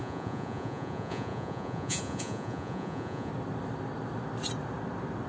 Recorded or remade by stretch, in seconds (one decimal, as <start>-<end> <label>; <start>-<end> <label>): 0.0-3.3 remade; 3.3-5.3 recorded